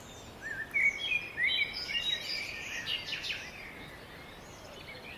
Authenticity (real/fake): real